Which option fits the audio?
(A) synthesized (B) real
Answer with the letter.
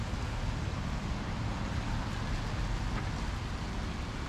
B